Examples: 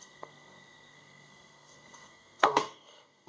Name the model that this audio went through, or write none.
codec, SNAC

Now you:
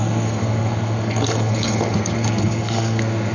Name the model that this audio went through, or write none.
codec, SNAC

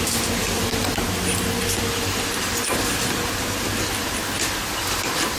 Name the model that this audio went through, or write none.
none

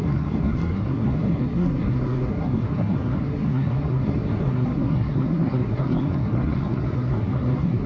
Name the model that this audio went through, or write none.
codec, SNAC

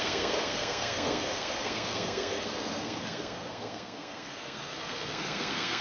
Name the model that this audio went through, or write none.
codec, SNAC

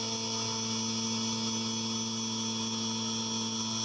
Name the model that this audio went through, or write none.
none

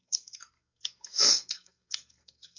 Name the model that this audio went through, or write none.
codec, SNAC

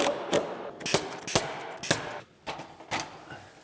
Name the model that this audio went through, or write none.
none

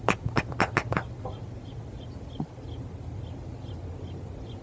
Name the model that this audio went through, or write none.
none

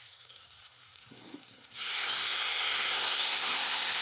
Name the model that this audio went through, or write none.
codec, SNAC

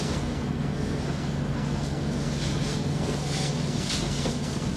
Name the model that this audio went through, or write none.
codec, SNAC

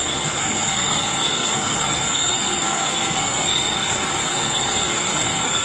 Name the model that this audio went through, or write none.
codec, SNAC